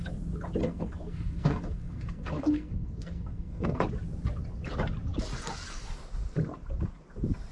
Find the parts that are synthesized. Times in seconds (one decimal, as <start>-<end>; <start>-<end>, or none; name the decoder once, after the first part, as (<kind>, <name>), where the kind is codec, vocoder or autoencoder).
0.6-3.8 (codec, SNAC)